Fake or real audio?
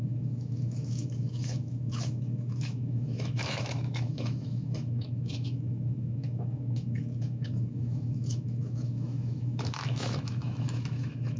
fake